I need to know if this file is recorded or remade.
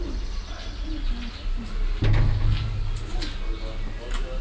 recorded